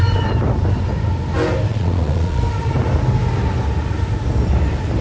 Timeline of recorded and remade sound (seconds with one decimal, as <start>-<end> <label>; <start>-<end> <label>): 0.0-1.7 recorded; 1.7-2.4 remade; 2.4-5.0 recorded